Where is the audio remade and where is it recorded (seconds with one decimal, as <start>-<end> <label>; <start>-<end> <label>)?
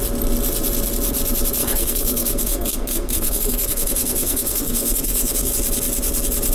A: 0.0-1.6 recorded; 1.6-5.5 remade; 5.5-6.5 recorded